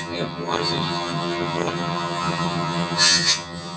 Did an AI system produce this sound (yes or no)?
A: yes